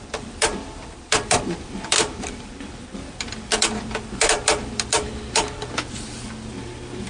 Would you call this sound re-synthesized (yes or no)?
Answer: yes